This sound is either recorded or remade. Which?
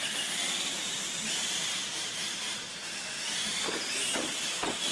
remade